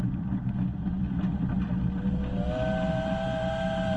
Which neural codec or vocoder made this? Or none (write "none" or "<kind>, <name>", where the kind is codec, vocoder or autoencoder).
none